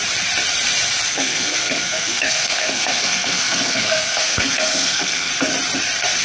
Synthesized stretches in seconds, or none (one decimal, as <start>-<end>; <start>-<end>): 1.1-5.3